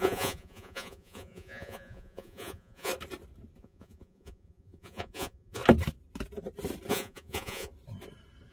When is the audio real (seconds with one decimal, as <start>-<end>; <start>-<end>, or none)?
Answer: 2.9-3.6; 5.6-6.9; 7.7-8.5